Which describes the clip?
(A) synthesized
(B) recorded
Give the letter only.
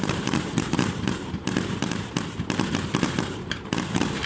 A